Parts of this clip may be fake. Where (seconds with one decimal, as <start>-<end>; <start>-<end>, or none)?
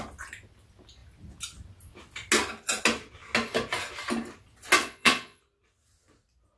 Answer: 4.8-5.4